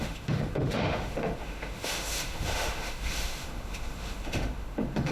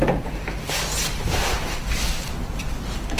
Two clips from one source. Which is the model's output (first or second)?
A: first